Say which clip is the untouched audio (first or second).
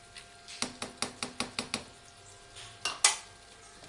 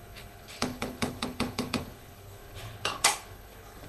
first